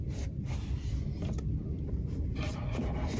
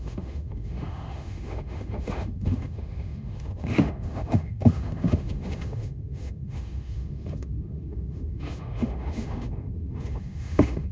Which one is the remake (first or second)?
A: second